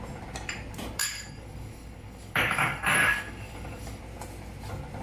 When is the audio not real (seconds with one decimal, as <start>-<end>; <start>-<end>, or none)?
1.0-4.0